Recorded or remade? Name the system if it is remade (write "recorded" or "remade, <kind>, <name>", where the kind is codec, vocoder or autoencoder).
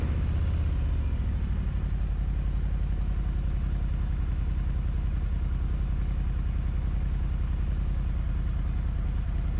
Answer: recorded